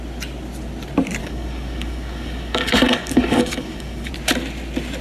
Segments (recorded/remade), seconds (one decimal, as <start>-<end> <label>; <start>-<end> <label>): 0.0-1.2 recorded; 1.2-4.1 remade; 4.1-5.0 recorded